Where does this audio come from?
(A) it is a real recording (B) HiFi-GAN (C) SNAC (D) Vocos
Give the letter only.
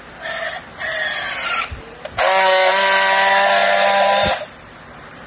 A